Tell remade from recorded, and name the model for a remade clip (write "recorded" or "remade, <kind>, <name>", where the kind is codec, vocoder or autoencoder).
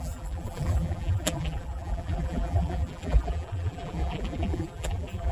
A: remade, vocoder, BigVGAN v2